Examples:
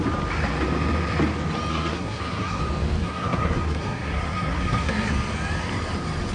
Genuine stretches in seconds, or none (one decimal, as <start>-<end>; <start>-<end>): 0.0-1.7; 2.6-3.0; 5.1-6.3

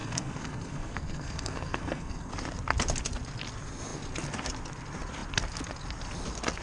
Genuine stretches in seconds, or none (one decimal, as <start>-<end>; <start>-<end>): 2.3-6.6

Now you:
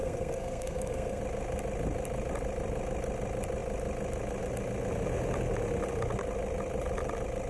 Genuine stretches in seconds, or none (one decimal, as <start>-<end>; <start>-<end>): 1.2-7.5